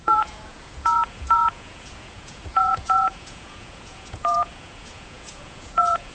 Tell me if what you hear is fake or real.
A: fake